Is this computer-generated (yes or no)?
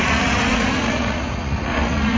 yes